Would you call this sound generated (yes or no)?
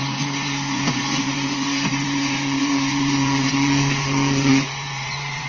yes